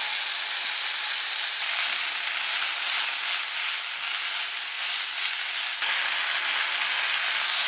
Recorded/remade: recorded